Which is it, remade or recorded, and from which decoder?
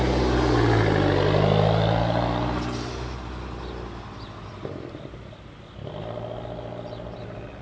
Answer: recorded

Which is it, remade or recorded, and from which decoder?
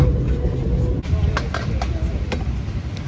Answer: recorded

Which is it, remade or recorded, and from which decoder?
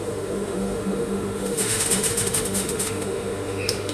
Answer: remade, autoencoder, DAC-VAE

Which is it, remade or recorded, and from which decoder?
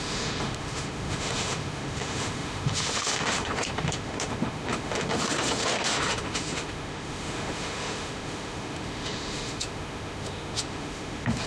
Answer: remade, autoencoder, DAC-VAE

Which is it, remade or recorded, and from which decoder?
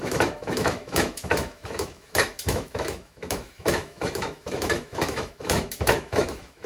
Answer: remade, autoencoder, DAC-VAE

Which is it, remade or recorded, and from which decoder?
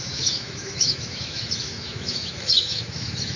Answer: remade, autoencoder, DAC-VAE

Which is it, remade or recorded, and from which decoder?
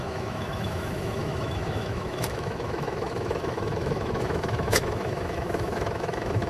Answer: remade, autoencoder, DAC-VAE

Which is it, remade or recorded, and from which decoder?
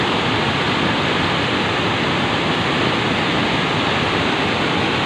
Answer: recorded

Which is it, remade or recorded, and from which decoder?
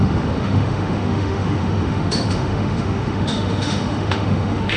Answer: remade, autoencoder, DAC-VAE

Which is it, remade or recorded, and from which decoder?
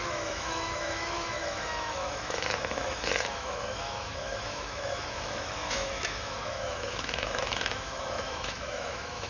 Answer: remade, autoencoder, DAC-VAE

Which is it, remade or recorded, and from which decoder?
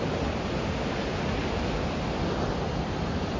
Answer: recorded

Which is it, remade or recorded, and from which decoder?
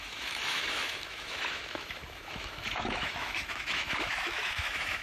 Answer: remade, autoencoder, DAC-VAE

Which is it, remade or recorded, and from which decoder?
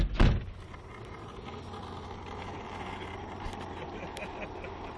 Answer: recorded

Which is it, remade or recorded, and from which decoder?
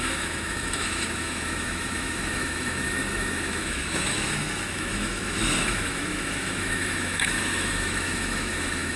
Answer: remade, autoencoder, DAC-VAE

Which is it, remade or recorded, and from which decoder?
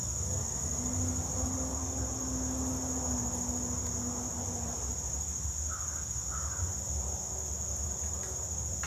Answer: recorded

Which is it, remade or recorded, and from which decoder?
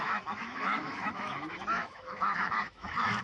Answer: remade, autoencoder, DAC-VAE